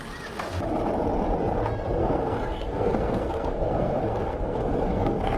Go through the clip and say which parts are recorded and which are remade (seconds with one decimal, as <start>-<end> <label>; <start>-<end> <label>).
0.0-2.0 recorded; 2.0-5.4 remade